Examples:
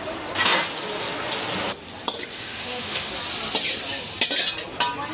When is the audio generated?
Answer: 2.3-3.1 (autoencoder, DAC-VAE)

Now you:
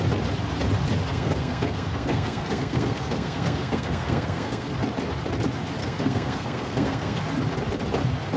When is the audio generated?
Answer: 1.1-4.7 (codec, SNAC); 5.8-7.2

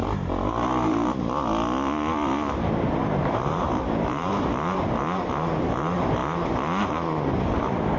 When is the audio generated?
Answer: 0.0-1.2 (vocoder, BigVGAN v2); 3.0-4.3

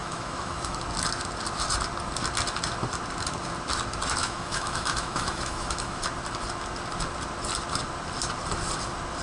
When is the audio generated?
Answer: 0.0-0.8 (autoencoder, DAC-VAE); 4.2-6.0

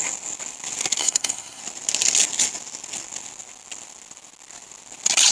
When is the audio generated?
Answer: 1.0-1.6 (codec, SNAC)

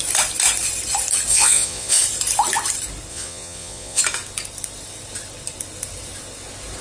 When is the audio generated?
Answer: 1.3-2.0 (vocoder, Vocos); 3.1-4.0